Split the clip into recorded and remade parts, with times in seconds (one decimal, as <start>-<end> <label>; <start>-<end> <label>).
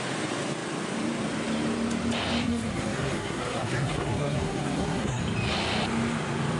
0.0-2.4 recorded; 2.4-5.2 remade; 5.2-6.6 recorded